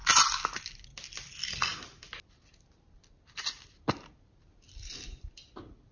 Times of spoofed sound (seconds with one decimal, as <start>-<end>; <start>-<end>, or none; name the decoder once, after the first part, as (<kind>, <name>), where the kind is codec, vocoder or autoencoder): none